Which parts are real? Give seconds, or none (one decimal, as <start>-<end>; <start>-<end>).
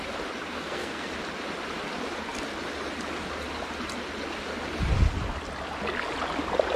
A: 0.0-0.5; 1.1-6.8